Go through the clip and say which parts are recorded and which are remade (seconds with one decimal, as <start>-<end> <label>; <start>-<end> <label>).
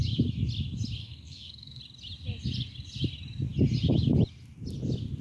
0.0-1.0 recorded; 1.0-1.8 remade; 1.8-5.2 recorded